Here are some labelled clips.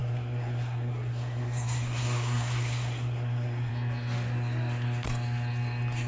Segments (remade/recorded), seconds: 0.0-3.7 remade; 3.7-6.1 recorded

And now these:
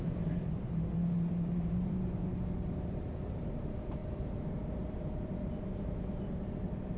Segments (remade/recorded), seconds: 0.0-2.3 remade; 2.3-3.4 recorded; 3.4-7.0 remade

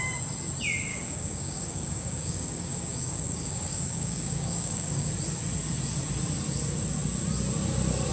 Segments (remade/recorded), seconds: 0.0-0.9 recorded; 0.9-5.1 remade; 5.1-8.1 recorded

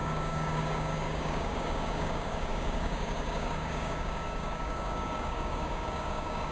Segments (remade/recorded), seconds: 0.0-6.5 remade

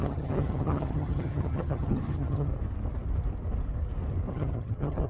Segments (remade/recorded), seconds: 0.0-2.5 remade; 2.5-4.3 recorded; 4.3-5.1 remade